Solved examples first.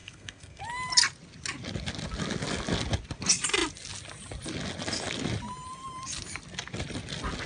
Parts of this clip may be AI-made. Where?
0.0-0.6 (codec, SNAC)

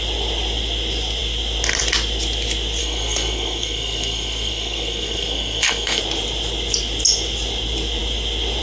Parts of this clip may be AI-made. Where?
2.8-6.0 (codec, SNAC)

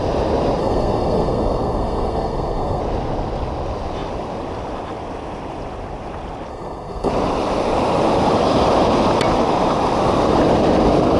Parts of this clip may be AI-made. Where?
0.6-2.8 (codec, SNAC); 6.5-7.1

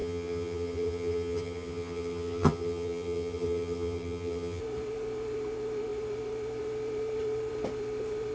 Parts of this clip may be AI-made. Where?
0.0-4.6 (vocoder, HiFi-GAN)

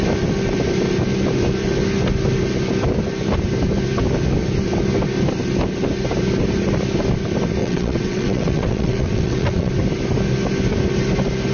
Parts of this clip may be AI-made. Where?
7.6-9.7 (vocoder, WaveNeXt)

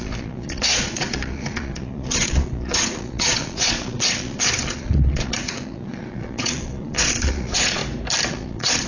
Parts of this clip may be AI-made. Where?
0.0-7.8 (vocoder, Vocos); 8.3-8.9

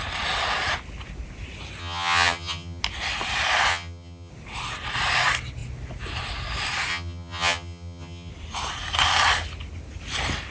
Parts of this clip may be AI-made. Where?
1.8-2.8 (vocoder, HiFi-GAN); 3.7-4.3; 6.9-8.3